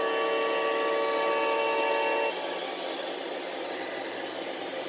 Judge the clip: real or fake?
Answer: real